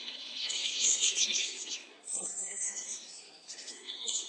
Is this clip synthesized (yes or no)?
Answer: yes